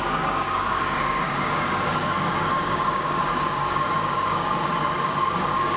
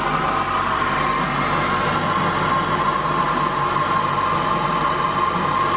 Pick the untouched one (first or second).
second